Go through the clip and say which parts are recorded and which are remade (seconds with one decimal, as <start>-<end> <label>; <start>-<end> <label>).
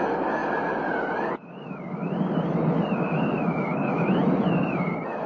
0.0-5.3 recorded